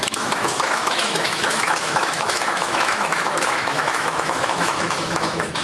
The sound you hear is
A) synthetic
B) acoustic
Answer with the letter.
A